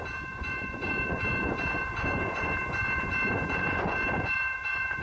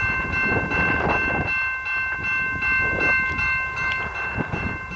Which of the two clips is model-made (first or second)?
first